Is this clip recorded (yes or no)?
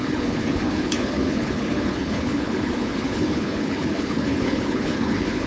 no